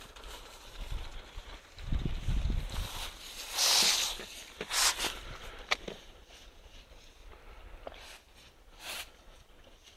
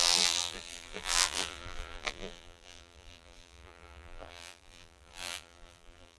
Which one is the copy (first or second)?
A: second